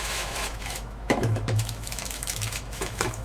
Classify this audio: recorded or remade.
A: remade